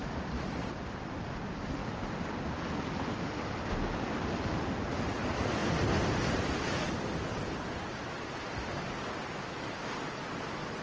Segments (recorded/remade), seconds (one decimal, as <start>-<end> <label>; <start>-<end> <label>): 0.0-10.8 recorded